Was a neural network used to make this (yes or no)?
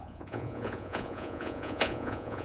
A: yes